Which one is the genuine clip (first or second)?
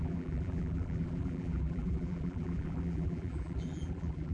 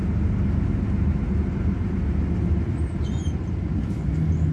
second